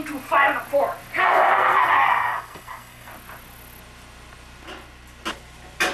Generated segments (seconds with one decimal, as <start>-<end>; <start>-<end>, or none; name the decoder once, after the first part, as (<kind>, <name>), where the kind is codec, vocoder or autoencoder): 1.2-3.1 (codec, SNAC)